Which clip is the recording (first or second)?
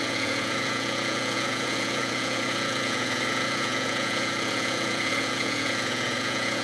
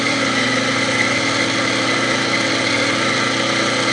second